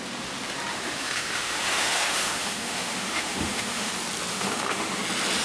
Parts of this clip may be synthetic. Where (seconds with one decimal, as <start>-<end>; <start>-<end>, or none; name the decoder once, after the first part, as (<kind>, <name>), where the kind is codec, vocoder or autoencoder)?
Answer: 0.7-3.9 (autoencoder, DAC-VAE); 4.3-5.0